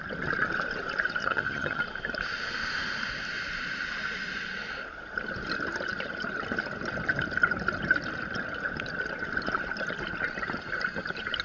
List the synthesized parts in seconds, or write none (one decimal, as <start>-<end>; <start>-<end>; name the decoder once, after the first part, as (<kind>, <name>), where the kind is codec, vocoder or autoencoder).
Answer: 1.2-1.8 (vocoder, HiFi-GAN)